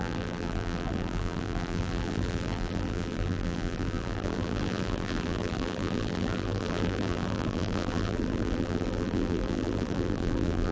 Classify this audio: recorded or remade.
remade